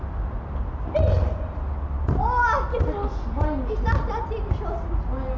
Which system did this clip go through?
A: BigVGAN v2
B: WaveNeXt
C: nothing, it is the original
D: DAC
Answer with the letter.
C